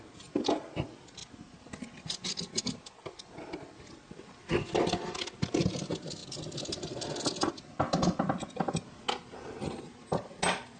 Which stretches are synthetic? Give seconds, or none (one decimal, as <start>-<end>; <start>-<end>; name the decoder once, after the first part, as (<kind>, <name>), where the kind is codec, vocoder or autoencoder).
none

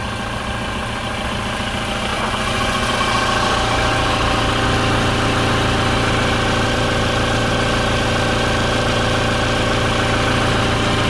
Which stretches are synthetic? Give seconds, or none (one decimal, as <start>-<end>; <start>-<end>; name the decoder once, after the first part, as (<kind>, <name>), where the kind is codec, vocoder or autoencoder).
2.1-2.9 (vocoder, Vocos)

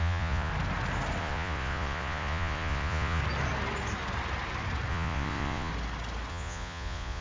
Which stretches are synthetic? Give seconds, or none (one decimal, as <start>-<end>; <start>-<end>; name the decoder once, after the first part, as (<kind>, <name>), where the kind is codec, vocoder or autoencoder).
0.0-0.5 (vocoder, Vocos); 1.2-3.2; 4.9-5.7; 6.3-7.2

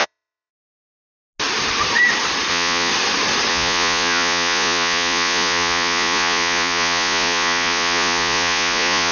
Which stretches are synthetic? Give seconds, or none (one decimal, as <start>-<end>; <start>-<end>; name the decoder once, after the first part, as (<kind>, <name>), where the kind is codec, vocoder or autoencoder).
0.0-0.5 (vocoder, Vocos); 2.5-2.9; 3.5-9.1